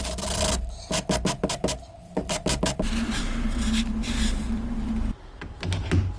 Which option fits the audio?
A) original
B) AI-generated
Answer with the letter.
A